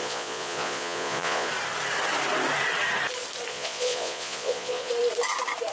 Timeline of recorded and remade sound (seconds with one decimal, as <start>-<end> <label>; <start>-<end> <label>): 0.0-1.5 remade; 1.5-3.5 recorded; 3.5-4.9 remade; 4.9-5.7 recorded